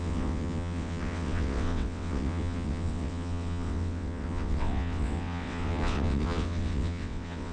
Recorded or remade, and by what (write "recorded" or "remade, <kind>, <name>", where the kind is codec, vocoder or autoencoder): remade, vocoder, WaveNeXt